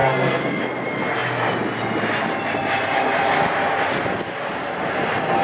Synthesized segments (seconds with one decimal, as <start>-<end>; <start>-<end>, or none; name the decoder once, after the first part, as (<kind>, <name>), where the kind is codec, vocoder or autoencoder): 0.0-0.6 (codec, SNAC)